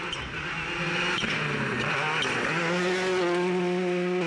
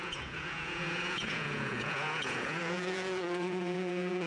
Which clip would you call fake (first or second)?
second